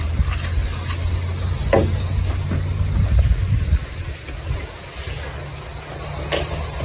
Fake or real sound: real